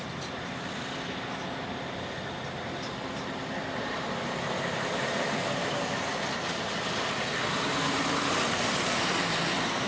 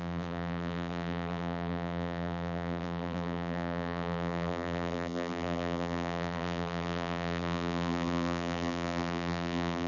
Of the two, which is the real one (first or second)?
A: first